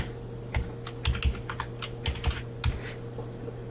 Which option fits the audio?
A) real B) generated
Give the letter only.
A